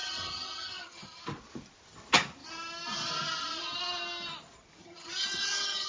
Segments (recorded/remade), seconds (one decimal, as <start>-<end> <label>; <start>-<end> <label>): 0.0-1.2 remade; 1.2-4.8 recorded; 4.8-5.9 remade